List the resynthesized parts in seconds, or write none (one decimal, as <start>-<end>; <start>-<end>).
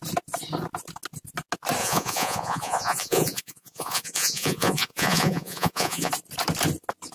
1.8-6.1